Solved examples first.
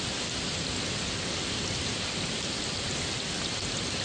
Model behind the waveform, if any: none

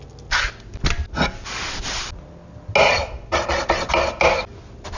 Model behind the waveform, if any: none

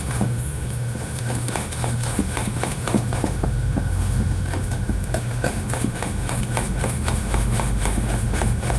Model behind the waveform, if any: autoencoder, DAC-VAE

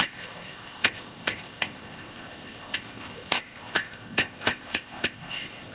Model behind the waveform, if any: codec, ZipCodec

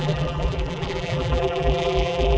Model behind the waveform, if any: vocoder, BigVGAN v2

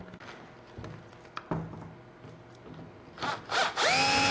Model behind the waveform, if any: none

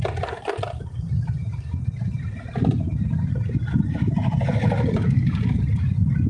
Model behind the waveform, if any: none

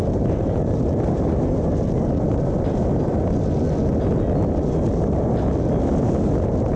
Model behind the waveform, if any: none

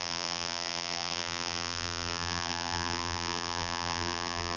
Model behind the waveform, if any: vocoder, BigVGAN v2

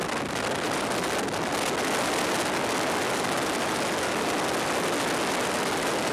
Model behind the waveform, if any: none